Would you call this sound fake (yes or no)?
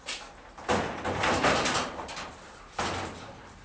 no